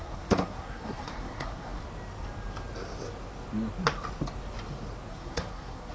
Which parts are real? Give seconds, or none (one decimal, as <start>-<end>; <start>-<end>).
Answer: 1.8-5.1